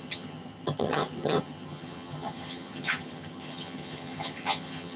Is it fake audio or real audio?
fake